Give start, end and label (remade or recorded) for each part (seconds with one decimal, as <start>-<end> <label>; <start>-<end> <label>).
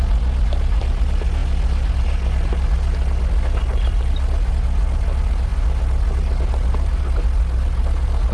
0.0-8.3 recorded